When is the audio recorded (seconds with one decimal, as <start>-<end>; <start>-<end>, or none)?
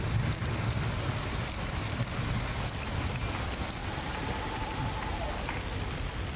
0.0-6.4